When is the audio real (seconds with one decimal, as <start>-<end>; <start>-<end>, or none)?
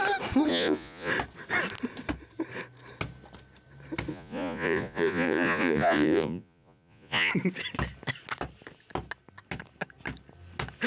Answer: 0.0-0.5; 1.1-4.1; 7.3-10.9